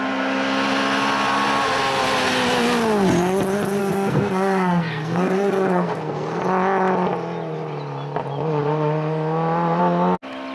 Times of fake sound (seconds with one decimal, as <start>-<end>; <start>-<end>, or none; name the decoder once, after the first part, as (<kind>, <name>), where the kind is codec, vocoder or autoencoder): 3.8-6.4 (codec, SNAC)